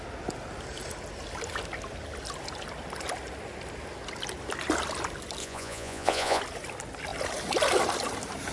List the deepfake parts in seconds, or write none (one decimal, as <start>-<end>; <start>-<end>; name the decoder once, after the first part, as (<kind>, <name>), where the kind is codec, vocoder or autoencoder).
5.4-6.4 (vocoder, Vocos)